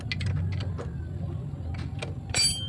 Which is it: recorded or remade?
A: recorded